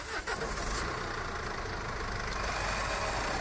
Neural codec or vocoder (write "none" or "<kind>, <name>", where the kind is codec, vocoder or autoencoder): none